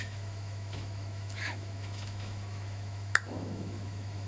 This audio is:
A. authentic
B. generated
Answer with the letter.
B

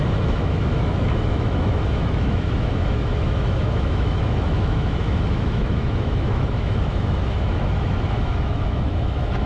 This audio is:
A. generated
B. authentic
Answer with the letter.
A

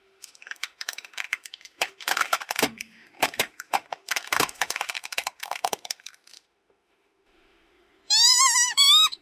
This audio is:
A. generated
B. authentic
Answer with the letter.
A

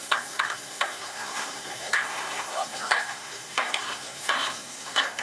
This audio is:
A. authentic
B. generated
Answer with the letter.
B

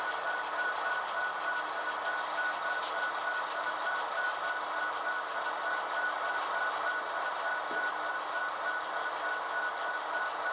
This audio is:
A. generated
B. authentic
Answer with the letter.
B